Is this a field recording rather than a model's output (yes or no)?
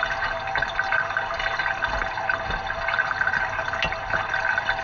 yes